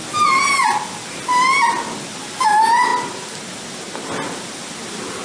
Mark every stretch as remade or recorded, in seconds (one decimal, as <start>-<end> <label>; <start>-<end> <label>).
0.0-5.2 recorded